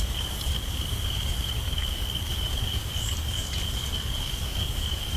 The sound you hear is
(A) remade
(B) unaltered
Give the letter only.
A